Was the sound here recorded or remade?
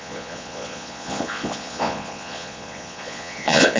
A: remade